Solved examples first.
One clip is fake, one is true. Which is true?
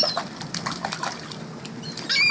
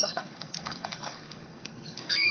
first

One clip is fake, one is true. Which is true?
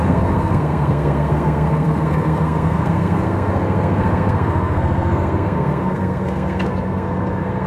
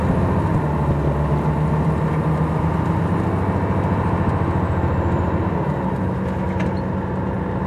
second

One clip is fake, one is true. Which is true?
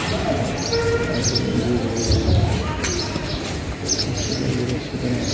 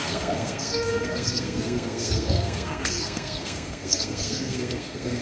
first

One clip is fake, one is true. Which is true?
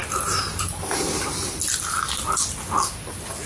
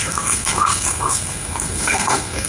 first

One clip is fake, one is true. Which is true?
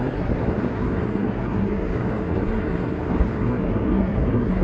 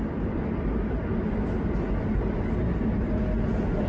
second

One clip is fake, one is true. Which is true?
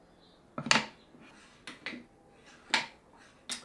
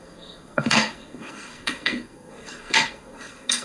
first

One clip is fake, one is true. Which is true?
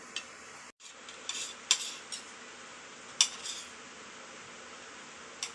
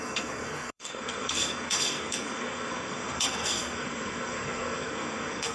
first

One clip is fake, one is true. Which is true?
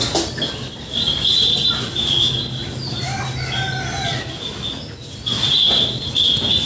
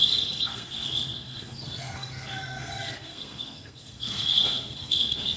first